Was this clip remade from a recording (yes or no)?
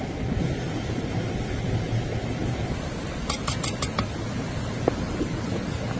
no